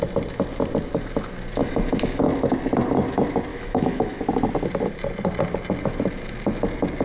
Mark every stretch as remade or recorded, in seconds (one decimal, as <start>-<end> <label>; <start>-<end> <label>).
0.0-1.6 recorded; 1.6-2.2 remade; 2.2-3.5 recorded; 3.5-4.2 remade; 4.2-7.0 recorded